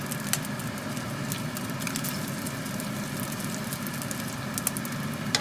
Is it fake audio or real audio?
real